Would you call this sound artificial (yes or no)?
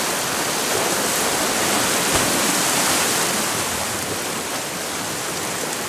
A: no